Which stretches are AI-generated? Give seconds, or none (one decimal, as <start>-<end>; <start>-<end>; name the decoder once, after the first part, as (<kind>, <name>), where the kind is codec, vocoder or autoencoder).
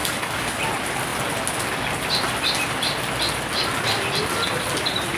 0.0-0.6 (codec, DAC)